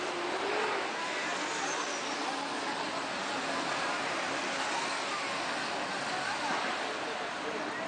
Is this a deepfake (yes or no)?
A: no